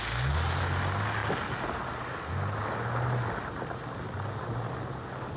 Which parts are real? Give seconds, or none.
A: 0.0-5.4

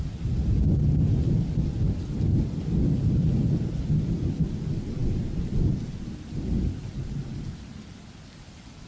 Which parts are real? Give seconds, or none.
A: 0.0-8.9

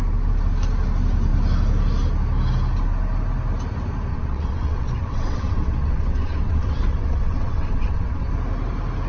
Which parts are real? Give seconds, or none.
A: 0.0-4.1; 8.3-9.1

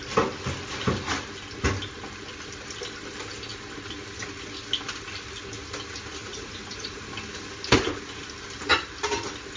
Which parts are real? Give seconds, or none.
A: 0.0-6.2; 7.1-9.6

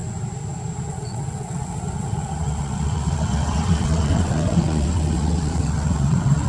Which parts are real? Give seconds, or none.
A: 0.0-0.9

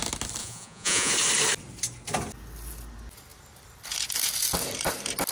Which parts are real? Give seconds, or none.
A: 0.0-0.4; 1.1-5.3

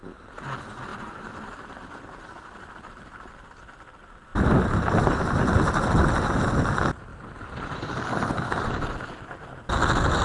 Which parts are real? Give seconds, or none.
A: 0.0-0.9; 3.6-4.3; 5.2-7.1; 8.9-10.2

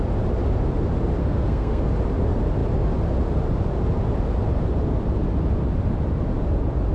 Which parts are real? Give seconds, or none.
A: 0.0-1.2; 1.8-6.9